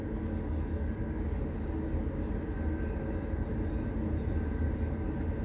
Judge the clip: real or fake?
real